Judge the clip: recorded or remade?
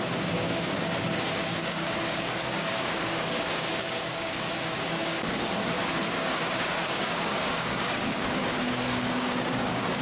remade